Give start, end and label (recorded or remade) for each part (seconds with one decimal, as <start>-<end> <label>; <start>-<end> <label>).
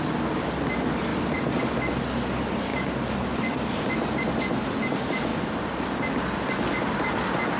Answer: 0.0-1.1 recorded; 1.1-1.6 remade; 1.6-2.7 recorded; 2.7-4.8 remade; 4.8-5.3 recorded; 5.3-6.5 remade; 6.5-7.6 recorded